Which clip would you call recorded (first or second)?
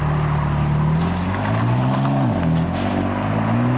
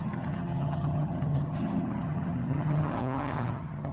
first